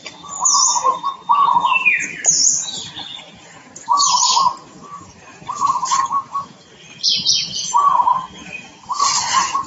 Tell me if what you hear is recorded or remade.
recorded